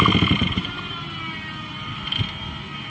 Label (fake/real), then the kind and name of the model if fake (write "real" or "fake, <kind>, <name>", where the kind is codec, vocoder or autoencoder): real